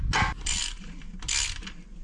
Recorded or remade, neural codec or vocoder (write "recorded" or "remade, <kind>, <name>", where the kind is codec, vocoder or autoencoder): recorded